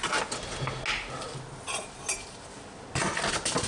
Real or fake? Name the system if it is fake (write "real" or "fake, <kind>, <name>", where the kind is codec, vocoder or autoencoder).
real